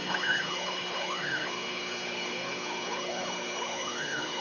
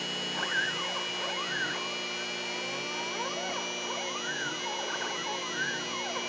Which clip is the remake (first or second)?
first